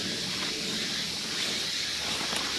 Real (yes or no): yes